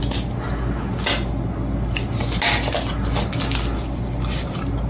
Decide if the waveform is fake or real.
real